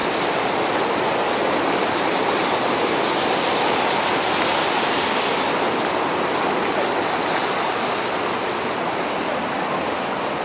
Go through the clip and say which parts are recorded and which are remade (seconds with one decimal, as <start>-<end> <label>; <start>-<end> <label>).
0.0-10.4 recorded